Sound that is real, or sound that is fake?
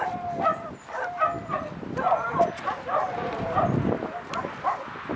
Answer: fake